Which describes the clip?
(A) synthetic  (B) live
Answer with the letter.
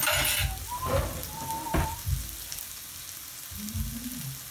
B